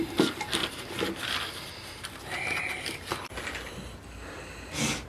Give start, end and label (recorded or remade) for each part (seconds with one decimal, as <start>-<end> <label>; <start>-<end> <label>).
0.0-5.1 recorded